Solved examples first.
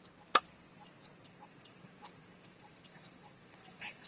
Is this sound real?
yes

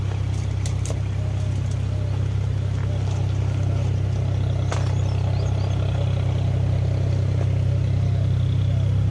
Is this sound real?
yes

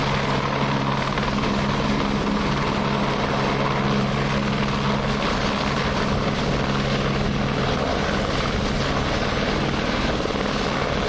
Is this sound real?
yes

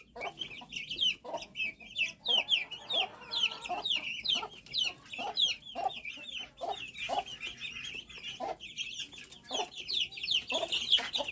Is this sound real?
yes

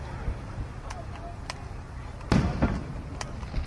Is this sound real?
yes